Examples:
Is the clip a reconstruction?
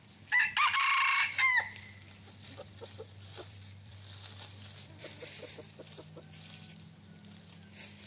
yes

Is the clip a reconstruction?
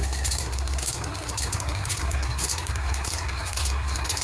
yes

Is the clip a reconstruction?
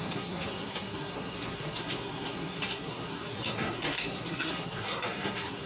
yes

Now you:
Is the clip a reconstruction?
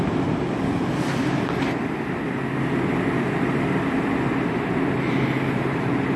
no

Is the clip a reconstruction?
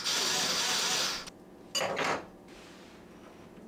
no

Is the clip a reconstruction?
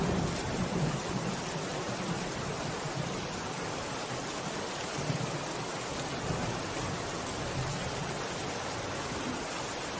no